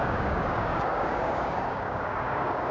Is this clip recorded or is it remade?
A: remade